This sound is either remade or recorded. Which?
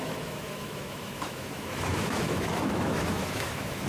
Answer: remade